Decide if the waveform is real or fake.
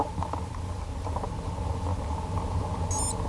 real